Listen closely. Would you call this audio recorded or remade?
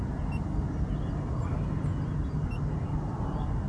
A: recorded